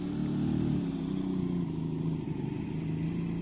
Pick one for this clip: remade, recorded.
recorded